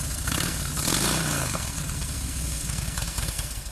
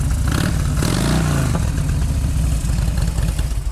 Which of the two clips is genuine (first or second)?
second